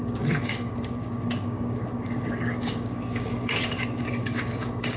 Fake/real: fake